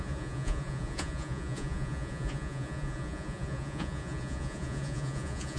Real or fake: fake